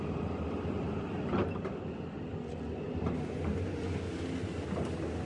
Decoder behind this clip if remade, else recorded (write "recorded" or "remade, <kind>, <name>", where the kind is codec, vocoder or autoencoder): recorded